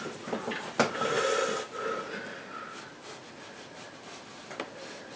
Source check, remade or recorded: recorded